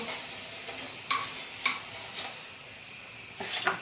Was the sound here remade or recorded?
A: recorded